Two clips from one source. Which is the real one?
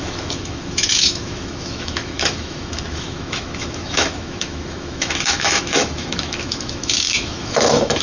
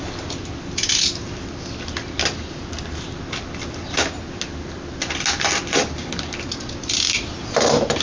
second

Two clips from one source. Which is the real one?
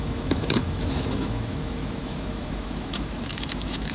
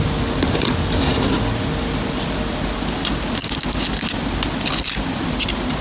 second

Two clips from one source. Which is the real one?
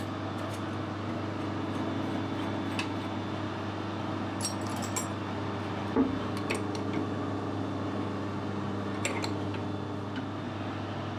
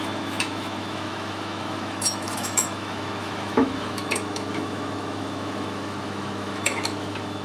first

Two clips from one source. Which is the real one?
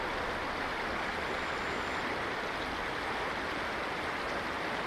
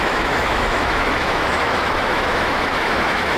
first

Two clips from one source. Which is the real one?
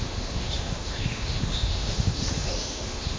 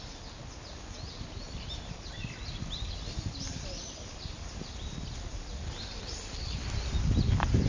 second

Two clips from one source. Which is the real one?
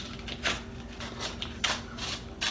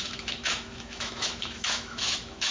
first